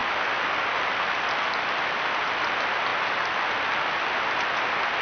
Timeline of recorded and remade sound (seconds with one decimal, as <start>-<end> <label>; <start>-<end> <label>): 0.0-5.0 recorded